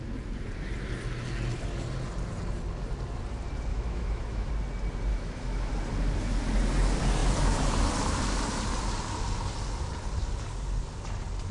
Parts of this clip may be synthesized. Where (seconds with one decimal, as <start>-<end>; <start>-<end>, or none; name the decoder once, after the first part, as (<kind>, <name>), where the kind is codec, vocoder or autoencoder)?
3.7-4.5 (autoencoder, DAC-VAE); 5.1-5.7

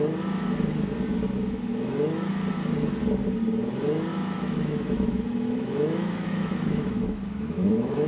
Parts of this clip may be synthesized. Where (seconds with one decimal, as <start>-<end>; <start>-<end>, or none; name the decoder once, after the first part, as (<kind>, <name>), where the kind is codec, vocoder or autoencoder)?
1.7-2.3 (autoencoder, DAC-VAE); 4.1-8.1

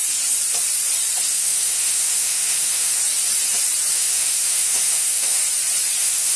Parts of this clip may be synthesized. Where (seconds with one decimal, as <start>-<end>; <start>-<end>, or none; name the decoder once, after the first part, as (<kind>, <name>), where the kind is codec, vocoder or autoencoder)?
1.3-3.0 (autoencoder, DAC-VAE); 3.9-5.4; 6.0-6.4

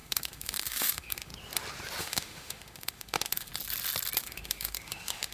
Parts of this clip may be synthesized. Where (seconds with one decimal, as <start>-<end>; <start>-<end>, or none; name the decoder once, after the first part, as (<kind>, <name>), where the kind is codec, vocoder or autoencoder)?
0.0-1.3 (autoencoder, DAC-VAE); 2.0-3.5; 4.2-5.3

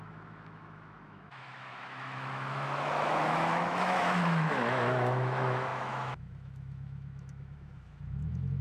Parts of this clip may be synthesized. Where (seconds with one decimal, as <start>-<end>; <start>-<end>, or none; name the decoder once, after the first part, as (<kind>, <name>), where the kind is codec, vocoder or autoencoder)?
0.0-8.6 (autoencoder, DAC-VAE)

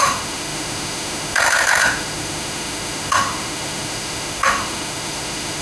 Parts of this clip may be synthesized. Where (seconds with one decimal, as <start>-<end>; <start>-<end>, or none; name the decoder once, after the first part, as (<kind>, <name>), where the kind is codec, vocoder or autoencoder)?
0.0-5.6 (autoencoder, DAC-VAE)

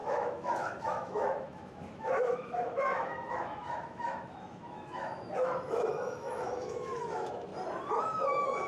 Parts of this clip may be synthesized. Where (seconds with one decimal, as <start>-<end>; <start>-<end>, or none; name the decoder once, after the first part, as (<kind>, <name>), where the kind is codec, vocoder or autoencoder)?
0.0-7.5 (autoencoder, DAC-VAE); 8.0-8.7

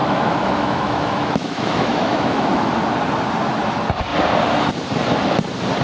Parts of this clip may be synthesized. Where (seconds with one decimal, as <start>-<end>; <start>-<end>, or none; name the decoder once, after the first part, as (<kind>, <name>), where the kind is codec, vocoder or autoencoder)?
0.0-2.8 (autoencoder, DAC-VAE)